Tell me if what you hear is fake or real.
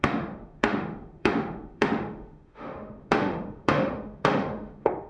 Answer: fake